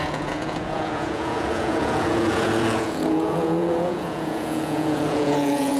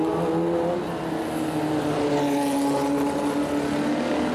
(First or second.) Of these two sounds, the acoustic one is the second